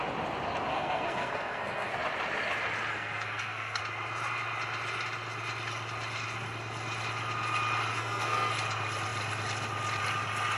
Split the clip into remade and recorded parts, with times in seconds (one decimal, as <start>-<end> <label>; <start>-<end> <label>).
0.0-0.7 recorded; 0.7-1.9 remade; 1.9-2.9 recorded; 2.9-3.8 remade; 3.8-7.9 recorded; 7.9-8.5 remade; 8.5-10.6 recorded